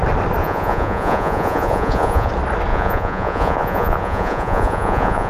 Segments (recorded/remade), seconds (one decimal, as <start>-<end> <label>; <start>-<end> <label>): 0.0-0.4 recorded; 0.4-2.3 remade; 2.3-2.7 recorded; 2.7-5.3 remade